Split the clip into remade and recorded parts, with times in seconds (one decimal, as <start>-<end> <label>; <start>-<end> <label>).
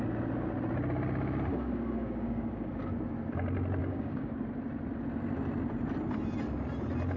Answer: 0.0-1.5 recorded; 1.5-2.7 remade; 2.7-3.8 recorded; 3.8-4.4 remade; 4.4-7.2 recorded